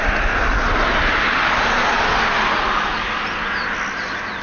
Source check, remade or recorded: recorded